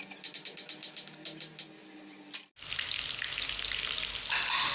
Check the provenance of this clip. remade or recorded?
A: recorded